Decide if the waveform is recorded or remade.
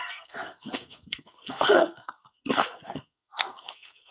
remade